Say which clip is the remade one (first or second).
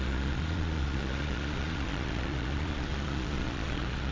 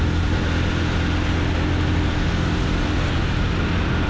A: first